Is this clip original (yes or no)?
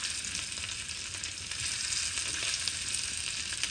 yes